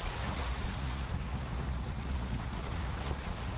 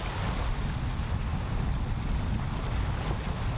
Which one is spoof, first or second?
first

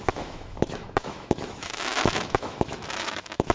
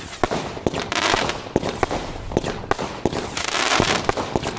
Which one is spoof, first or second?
first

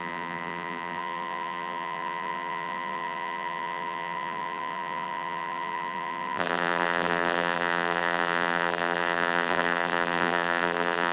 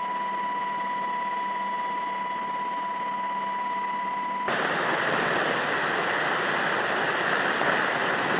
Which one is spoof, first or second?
first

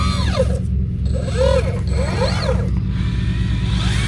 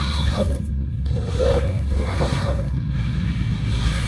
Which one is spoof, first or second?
second